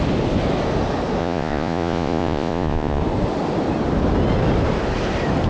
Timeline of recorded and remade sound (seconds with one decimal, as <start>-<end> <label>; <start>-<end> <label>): 0.0-1.2 recorded; 1.2-3.0 remade; 3.0-5.5 recorded